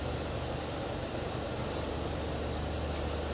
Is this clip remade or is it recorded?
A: recorded